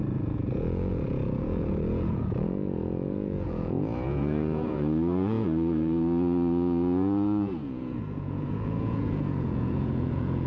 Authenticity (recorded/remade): remade